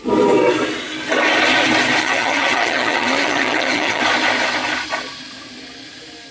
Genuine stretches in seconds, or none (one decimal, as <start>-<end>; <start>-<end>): 0.0-2.0; 4.0-6.3